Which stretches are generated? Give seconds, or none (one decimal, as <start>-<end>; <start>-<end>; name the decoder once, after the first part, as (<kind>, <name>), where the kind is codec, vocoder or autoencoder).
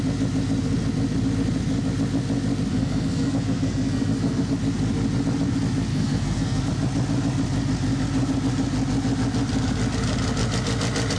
2.7-4.5 (codec, SNAC); 5.9-6.6